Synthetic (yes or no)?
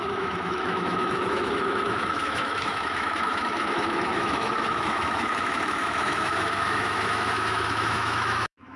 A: yes